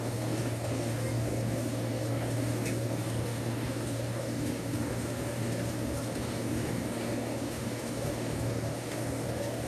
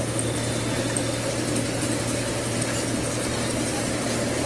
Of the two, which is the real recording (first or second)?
second